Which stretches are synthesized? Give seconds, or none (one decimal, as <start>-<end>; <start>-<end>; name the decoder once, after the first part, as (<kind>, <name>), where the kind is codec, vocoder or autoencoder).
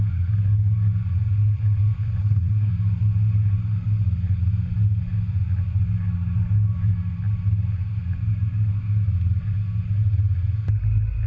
2.2-2.7 (codec, SNAC)